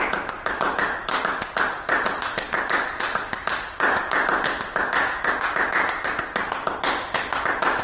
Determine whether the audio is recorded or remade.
recorded